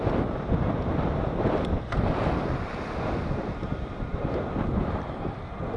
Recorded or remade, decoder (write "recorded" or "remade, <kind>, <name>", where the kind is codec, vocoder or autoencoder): recorded